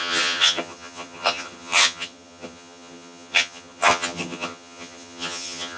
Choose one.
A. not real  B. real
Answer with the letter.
A